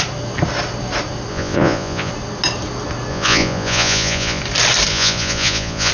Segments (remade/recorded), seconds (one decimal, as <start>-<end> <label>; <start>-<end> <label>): 0.0-1.3 recorded; 1.3-2.1 remade; 2.1-3.1 recorded; 3.1-4.4 remade; 4.4-4.9 recorded; 4.9-5.9 remade